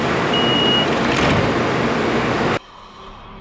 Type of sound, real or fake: real